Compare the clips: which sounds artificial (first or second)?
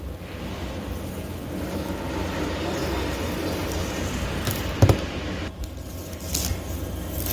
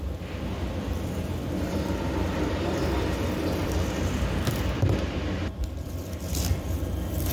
second